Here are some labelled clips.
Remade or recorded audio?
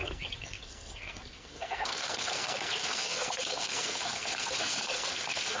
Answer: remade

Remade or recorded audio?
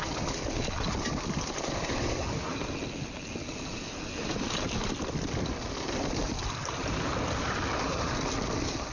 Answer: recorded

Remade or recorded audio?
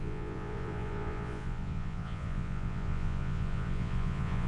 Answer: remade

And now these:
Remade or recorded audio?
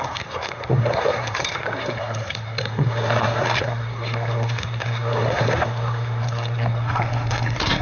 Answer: remade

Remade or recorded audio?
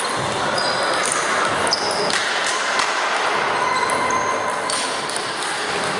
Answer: recorded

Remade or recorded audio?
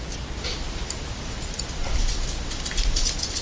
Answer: recorded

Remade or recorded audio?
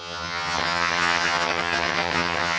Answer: remade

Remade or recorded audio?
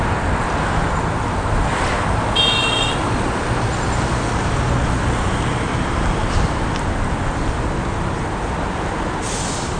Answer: recorded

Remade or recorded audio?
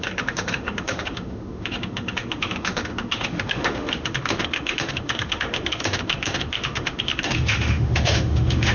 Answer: remade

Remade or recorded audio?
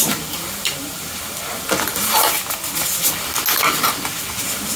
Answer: recorded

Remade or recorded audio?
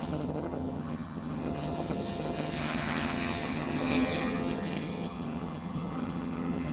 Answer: remade